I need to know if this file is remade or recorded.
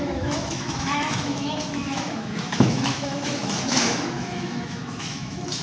remade